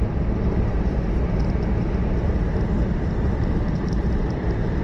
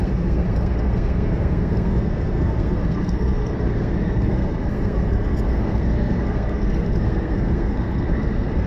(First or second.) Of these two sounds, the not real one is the second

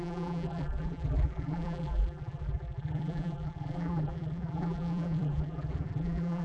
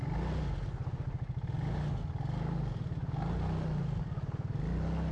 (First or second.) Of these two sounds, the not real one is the first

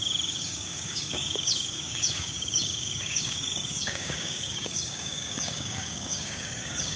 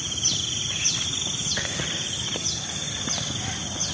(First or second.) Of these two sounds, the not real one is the first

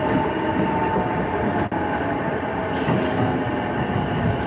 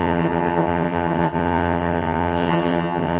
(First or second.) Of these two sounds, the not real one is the second